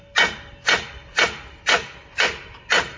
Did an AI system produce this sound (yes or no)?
no